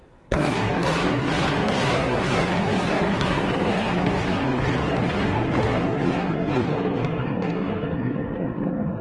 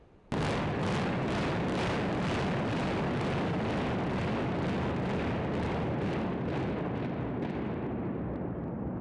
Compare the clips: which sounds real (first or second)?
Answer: second